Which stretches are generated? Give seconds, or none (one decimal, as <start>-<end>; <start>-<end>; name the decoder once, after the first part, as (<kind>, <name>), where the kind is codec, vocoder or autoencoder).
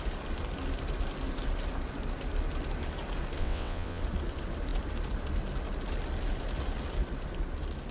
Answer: 3.4-4.0 (vocoder, WaveNeXt)